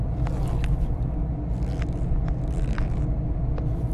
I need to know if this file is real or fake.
real